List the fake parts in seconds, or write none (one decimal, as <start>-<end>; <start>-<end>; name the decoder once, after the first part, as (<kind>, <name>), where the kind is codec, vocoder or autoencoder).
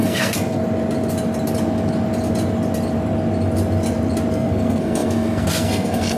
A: 0.0-0.6 (codec, SNAC); 4.3-6.2